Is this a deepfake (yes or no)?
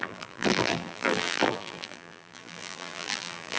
yes